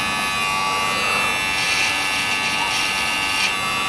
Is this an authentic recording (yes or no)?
yes